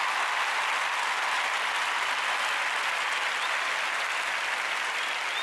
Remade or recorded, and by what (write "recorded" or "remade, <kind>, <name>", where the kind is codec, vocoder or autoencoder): recorded